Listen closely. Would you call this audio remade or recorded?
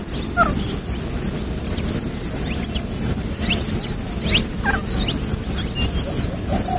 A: recorded